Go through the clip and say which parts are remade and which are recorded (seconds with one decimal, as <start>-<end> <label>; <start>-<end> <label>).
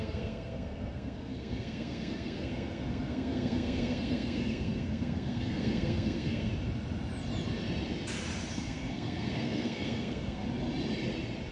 0.0-6.5 remade; 6.5-8.5 recorded; 8.5-10.4 remade; 10.4-11.5 recorded